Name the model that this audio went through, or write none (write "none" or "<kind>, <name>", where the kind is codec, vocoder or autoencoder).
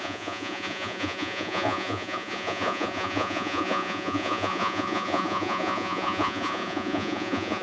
vocoder, Vocos